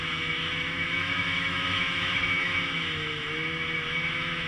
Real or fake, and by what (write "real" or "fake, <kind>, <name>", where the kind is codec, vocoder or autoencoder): fake, autoencoder, DAC-VAE